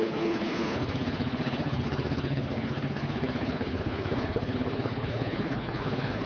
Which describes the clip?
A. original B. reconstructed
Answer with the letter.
B